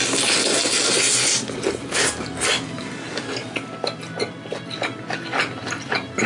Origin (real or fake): fake